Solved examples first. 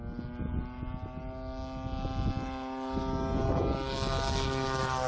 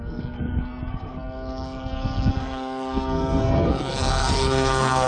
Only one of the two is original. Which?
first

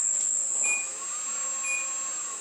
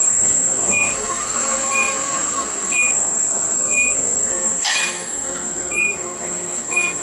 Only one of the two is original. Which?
first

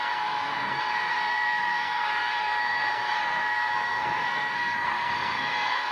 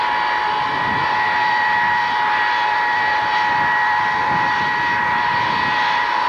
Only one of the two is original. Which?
second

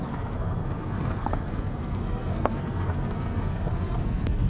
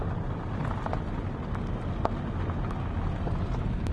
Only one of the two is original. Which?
second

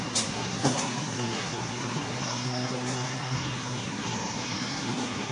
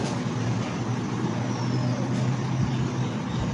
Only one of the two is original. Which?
second